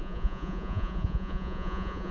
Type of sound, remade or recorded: remade